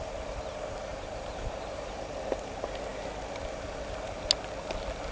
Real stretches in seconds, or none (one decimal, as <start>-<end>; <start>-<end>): 0.0-0.9; 2.0-5.1